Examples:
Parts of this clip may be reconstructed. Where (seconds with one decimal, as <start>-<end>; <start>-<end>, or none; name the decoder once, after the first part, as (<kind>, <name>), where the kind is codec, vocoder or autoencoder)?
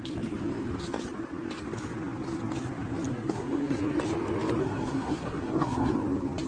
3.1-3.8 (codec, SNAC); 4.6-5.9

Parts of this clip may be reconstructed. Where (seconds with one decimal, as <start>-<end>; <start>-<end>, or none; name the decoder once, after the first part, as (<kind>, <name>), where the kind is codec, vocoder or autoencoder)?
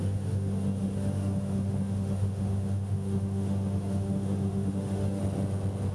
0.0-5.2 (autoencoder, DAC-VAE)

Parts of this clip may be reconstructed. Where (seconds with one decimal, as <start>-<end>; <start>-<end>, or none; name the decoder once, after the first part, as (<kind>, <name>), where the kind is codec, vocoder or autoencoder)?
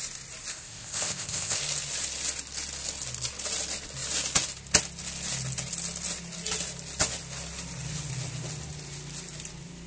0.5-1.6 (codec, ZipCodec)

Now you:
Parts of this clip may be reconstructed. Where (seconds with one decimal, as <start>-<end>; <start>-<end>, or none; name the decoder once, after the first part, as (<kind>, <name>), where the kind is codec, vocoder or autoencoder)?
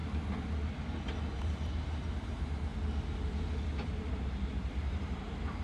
1.3-2.7 (vocoder, BigVGAN v2); 3.7-5.6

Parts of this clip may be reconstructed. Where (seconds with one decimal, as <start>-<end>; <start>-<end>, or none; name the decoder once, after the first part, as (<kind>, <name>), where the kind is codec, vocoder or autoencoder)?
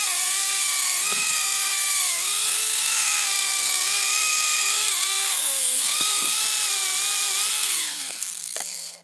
0.0-6.4 (codec, SNAC); 7.5-9.0